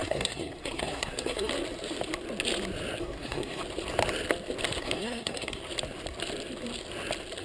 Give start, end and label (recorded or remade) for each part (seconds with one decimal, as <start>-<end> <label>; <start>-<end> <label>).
0.0-1.5 remade; 1.5-3.0 recorded; 3.0-3.6 remade; 3.6-4.8 recorded; 4.8-5.6 remade; 5.6-7.4 recorded